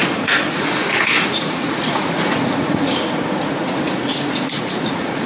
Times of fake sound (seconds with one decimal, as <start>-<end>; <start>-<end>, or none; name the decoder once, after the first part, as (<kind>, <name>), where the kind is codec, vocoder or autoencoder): 0.0-5.3 (vocoder, Vocos)